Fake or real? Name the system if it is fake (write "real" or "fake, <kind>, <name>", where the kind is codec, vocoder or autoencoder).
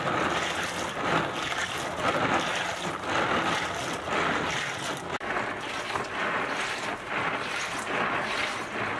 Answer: real